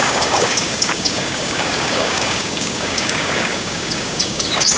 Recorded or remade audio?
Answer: remade